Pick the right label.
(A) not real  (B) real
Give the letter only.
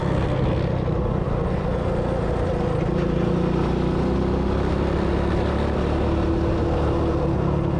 B